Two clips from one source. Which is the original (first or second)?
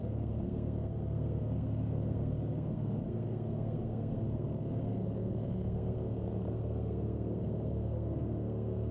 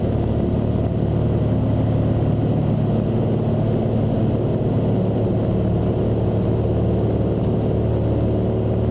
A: second